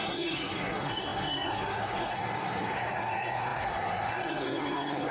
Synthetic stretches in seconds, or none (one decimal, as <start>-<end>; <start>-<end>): 0.0-5.1